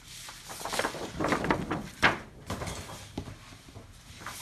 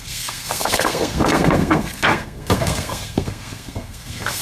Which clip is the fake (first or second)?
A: second